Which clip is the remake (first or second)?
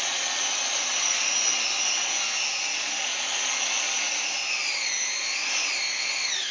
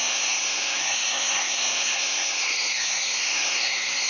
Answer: second